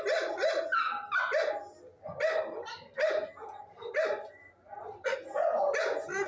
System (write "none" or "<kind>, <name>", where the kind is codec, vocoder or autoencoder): none